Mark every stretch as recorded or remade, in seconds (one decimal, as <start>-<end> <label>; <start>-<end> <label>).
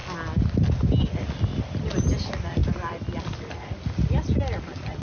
0.0-5.0 recorded